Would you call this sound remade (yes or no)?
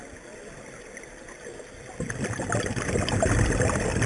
no